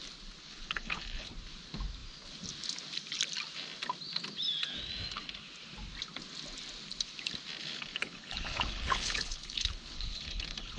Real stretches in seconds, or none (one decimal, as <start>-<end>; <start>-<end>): 0.0-0.4; 1.3-7.6